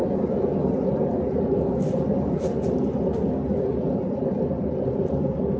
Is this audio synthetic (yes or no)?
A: no